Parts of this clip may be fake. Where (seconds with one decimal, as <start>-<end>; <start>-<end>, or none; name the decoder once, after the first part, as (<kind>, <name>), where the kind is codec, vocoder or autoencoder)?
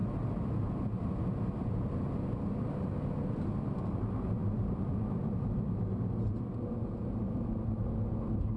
none